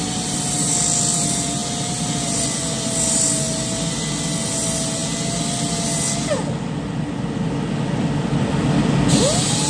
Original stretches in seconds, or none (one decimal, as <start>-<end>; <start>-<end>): 0.0-9.7